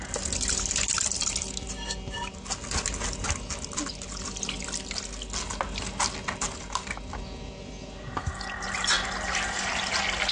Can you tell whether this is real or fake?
real